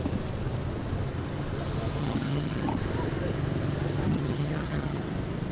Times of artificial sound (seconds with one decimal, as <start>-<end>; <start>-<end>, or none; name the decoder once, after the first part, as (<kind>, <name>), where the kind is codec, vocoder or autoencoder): 2.0-2.7 (vocoder, HiFi-GAN); 4.1-5.0